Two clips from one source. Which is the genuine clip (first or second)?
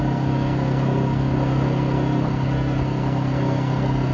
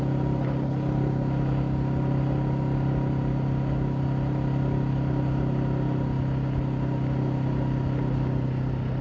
second